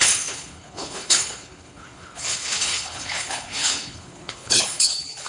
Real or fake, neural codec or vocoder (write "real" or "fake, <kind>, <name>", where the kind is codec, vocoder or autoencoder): fake, codec, HILCodec